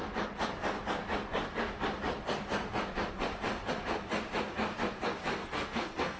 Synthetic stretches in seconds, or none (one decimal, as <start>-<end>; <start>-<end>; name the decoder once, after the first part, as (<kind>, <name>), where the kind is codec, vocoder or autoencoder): 5.4-6.2 (codec, SNAC)